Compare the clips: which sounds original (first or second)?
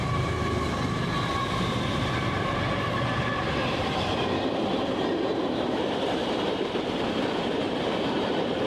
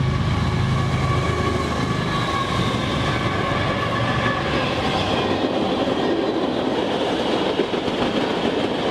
second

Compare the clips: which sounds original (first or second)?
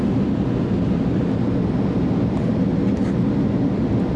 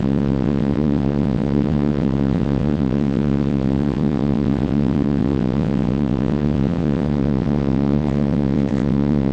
first